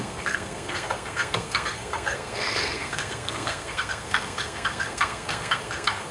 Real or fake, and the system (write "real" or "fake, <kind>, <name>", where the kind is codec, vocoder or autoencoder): fake, codec, SNAC